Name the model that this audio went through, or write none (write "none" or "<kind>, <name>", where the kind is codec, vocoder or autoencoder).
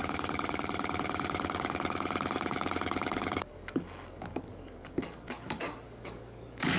codec, DAC